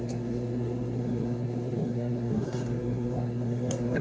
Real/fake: fake